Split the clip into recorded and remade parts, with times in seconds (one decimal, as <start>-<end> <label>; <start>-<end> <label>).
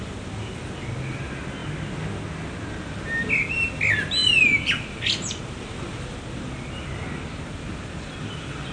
0.0-4.2 recorded; 4.2-5.4 remade; 5.4-7.5 recorded; 7.5-8.1 remade; 8.1-8.7 recorded